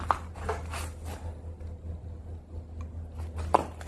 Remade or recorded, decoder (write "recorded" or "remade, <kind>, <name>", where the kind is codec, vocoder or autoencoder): recorded